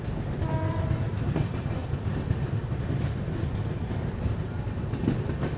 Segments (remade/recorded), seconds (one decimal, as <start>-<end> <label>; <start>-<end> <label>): 0.0-5.6 recorded